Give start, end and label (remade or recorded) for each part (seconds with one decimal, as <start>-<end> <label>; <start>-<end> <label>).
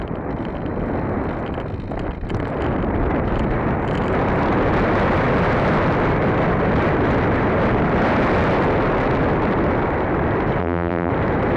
0.0-10.6 recorded; 10.6-11.1 remade; 11.1-11.6 recorded